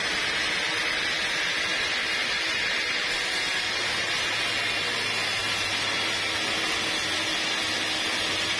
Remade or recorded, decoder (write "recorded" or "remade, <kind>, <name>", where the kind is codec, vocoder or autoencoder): recorded